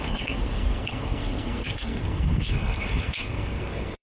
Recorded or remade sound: remade